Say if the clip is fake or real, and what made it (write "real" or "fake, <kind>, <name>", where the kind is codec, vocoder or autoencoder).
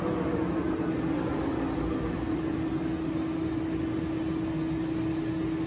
real